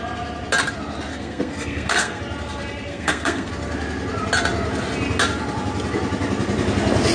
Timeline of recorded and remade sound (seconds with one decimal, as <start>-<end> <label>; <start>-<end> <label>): 0.0-1.1 recorded; 1.1-2.2 remade; 2.2-2.9 recorded; 2.9-3.5 remade; 3.5-7.1 recorded